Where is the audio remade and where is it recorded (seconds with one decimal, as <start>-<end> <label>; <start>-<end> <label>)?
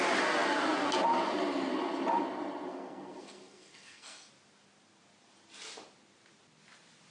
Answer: 0.0-2.7 recorded; 2.7-4.3 remade; 4.3-7.1 recorded